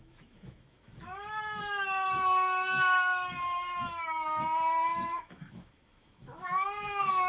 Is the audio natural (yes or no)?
no